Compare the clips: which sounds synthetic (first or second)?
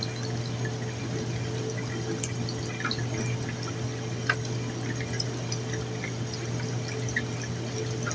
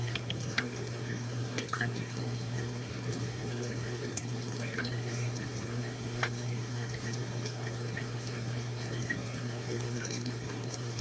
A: second